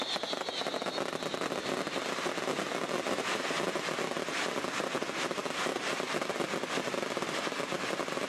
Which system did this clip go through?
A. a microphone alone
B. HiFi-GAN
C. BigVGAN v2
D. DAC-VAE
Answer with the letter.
A